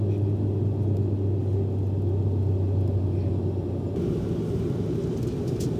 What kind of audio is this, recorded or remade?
recorded